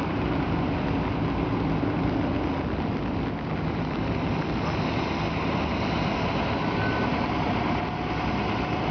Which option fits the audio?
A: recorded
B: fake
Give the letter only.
A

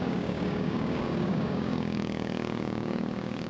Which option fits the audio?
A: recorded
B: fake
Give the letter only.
B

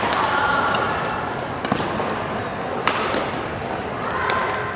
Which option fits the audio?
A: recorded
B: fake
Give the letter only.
A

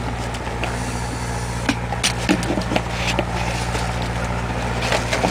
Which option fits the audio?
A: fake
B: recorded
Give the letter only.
B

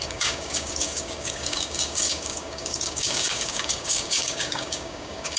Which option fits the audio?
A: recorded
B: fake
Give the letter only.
B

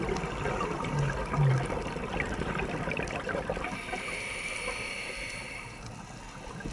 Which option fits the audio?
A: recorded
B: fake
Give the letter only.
A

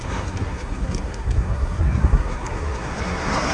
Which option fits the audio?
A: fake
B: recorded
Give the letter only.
A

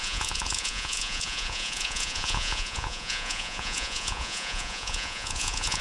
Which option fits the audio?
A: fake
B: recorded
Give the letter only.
A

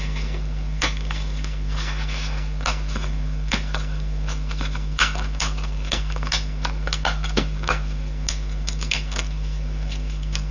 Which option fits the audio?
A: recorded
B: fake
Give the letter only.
B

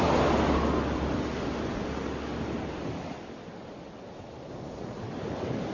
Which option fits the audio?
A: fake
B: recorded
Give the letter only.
B